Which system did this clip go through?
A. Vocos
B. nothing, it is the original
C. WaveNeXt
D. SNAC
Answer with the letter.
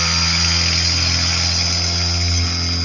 B